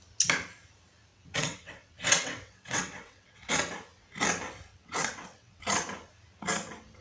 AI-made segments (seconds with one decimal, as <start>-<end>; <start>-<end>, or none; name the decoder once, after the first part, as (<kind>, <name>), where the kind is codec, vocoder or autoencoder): 1.1-3.5 (vocoder, WaveNeXt); 4.7-5.6